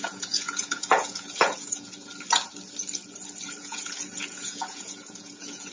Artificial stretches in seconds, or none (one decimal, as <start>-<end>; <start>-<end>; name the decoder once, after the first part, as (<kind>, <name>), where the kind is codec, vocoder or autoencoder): 0.0-2.1 (vocoder, Vocos); 3.6-5.7

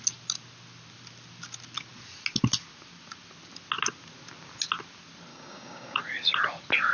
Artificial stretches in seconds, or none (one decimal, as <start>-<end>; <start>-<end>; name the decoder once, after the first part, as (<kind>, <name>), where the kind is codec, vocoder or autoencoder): 5.3-6.0 (codec, DAC)

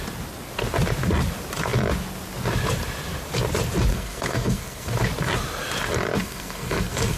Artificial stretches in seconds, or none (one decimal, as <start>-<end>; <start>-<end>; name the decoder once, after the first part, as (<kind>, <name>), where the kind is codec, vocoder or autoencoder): 3.9-4.9 (codec, SNAC); 6.2-7.2

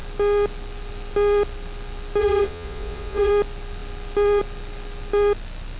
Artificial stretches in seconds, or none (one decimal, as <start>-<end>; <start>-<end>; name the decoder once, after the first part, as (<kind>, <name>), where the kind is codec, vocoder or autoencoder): 2.2-3.3 (vocoder, Vocos)